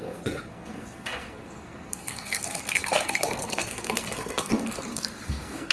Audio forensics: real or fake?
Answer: fake